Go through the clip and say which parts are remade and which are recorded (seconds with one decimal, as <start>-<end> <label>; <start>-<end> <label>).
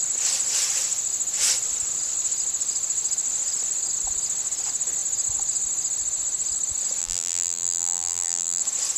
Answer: 0.0-7.0 recorded; 7.0-8.6 remade; 8.6-9.0 recorded